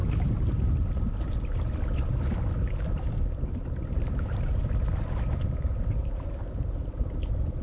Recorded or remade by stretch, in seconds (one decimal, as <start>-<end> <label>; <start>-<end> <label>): 0.0-7.6 recorded